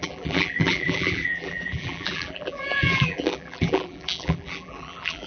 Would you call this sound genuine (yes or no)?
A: no